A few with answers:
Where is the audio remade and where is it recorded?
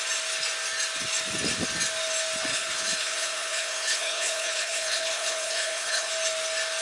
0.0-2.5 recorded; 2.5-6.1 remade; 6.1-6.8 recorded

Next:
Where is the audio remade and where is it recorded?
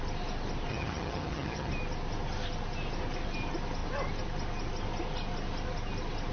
0.0-0.7 recorded; 0.7-1.7 remade; 1.7-6.3 recorded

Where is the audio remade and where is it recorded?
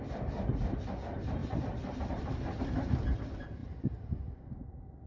0.0-5.1 recorded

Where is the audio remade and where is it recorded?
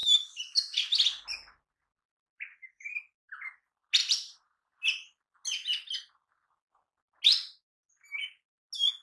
0.0-4.0 recorded; 4.0-4.8 remade; 4.8-9.0 recorded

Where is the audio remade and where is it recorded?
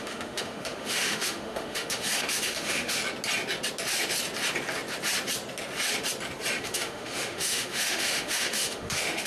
0.0-3.0 remade; 3.0-6.6 recorded; 6.6-9.3 remade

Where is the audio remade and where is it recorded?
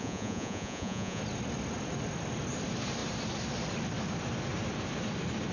0.0-1.2 remade; 1.2-5.5 recorded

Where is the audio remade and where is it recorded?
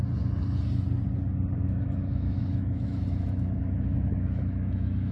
0.0-1.6 recorded; 1.6-5.1 remade